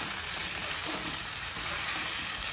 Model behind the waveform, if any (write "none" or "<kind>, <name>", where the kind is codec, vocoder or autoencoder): vocoder, BigVGAN v2